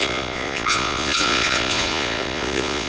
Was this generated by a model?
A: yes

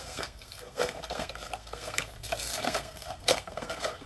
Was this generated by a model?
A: yes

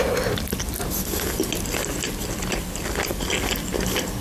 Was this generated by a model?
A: no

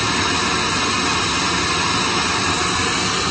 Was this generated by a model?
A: no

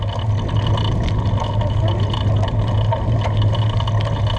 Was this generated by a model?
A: no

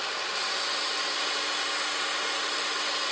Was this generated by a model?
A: no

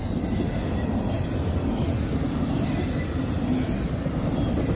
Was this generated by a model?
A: no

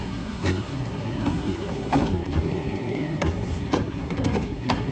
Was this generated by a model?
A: yes